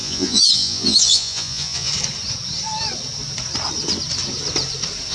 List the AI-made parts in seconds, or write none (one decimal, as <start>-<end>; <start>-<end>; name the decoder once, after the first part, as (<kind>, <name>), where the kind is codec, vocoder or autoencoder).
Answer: 0.0-1.9 (vocoder, Vocos)